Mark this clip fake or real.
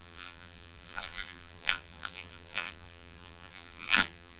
fake